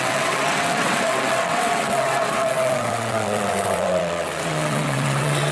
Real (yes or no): no